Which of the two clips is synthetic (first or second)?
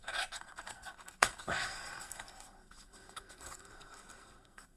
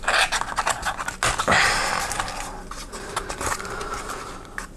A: first